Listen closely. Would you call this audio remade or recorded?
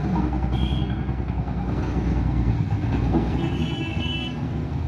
remade